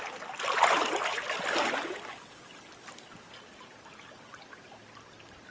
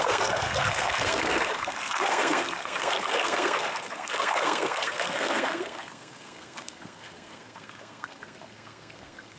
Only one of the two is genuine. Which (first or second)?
first